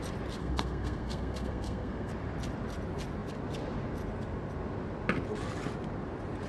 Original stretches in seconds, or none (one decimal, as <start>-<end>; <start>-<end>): 0.0-0.4; 2.1-6.5

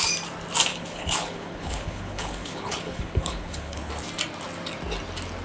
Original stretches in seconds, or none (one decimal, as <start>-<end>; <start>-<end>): 0.0-0.7; 3.9-5.4

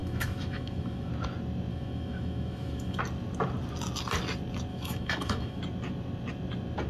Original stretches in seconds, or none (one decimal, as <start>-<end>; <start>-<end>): 1.1-1.7; 3.0-4.7; 5.6-6.9

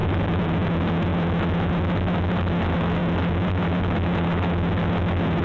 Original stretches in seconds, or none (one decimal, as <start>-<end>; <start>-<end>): 0.7-5.4